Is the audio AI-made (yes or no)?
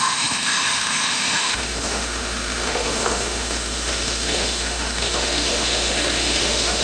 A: yes